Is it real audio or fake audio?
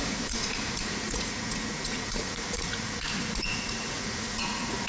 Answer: fake